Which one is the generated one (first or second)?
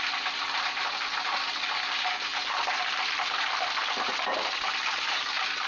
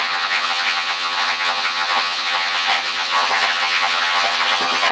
second